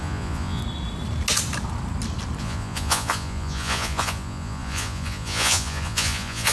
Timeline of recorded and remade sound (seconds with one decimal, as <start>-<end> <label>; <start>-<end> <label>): 0.0-0.6 remade; 0.6-2.4 recorded; 2.4-6.5 remade